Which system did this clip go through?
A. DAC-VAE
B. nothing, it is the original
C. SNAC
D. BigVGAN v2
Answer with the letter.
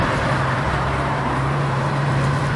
D